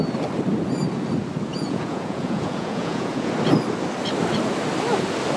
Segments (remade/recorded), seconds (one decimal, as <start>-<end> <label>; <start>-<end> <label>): 0.0-1.5 recorded; 1.5-3.3 remade; 3.3-5.4 recorded